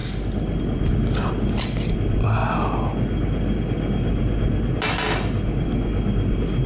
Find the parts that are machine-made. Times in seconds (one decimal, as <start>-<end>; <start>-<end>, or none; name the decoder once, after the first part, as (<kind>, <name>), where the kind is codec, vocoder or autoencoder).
none